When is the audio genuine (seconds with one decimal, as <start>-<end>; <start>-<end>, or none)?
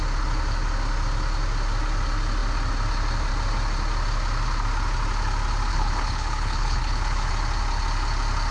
0.0-5.7; 7.3-8.5